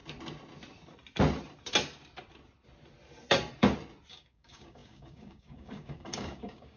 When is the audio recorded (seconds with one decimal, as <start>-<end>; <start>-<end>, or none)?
0.0-4.1